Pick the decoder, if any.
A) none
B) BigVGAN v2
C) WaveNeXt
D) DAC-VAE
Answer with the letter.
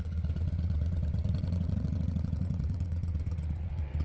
C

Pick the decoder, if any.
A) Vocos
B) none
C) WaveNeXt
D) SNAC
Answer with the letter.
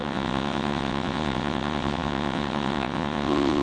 C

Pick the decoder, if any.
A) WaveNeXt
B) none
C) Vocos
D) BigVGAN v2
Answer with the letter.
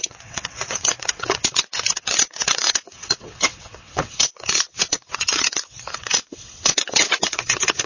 A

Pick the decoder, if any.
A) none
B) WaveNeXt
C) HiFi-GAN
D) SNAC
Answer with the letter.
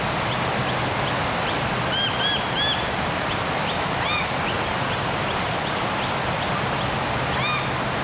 A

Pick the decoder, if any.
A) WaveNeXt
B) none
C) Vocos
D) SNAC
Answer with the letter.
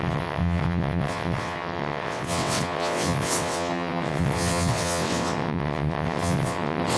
A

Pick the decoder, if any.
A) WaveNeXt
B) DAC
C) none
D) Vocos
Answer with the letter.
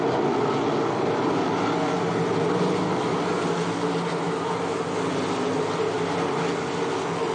C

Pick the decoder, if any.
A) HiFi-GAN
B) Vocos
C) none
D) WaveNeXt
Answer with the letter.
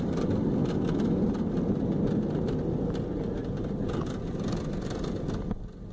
C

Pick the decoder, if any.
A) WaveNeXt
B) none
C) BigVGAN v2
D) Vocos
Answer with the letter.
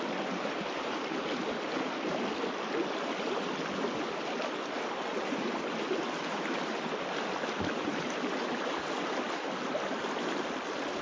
B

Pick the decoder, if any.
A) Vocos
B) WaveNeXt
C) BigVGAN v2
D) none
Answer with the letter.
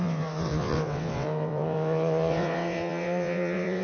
B